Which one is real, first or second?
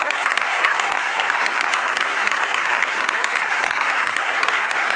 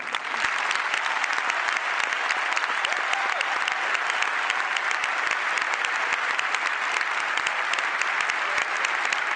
second